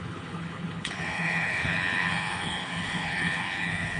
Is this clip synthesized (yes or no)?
yes